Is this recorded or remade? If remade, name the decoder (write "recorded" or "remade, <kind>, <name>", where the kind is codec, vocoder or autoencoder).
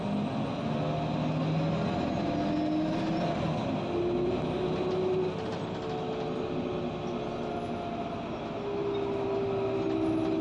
recorded